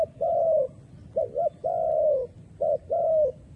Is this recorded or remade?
recorded